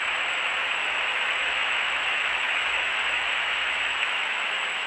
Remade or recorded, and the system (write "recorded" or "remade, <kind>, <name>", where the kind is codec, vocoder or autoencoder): remade, autoencoder, DAC-VAE